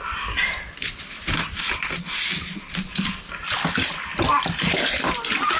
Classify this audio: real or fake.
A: real